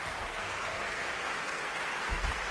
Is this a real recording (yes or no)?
no